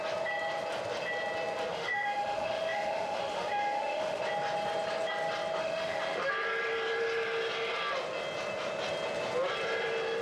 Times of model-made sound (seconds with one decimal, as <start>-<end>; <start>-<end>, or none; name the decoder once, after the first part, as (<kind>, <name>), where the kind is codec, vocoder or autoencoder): 1.7-4.2 (autoencoder, DAC-VAE); 5.6-6.3